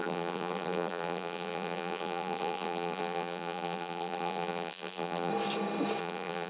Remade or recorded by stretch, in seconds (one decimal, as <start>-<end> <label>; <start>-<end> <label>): 0.0-5.3 remade; 5.3-6.0 recorded; 6.0-6.5 remade